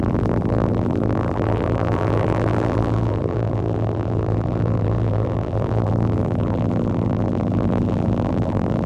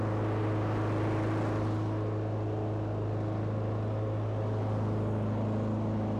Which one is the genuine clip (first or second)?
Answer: second